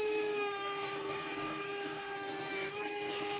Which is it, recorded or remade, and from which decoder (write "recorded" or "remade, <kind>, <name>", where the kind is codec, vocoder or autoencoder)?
remade, codec, DAC